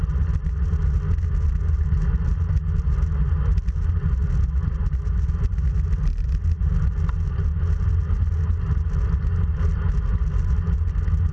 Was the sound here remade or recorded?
recorded